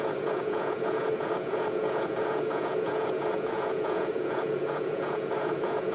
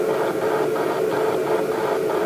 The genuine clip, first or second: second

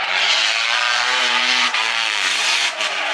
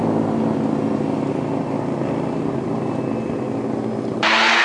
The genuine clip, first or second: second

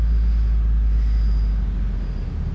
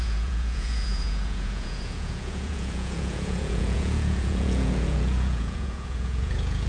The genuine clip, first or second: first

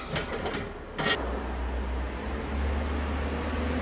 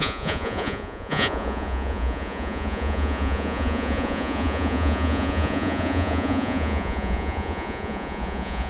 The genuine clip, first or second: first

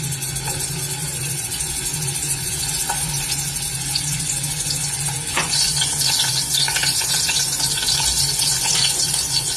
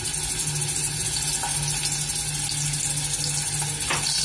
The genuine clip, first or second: second